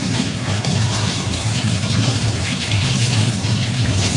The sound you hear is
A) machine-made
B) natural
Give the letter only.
A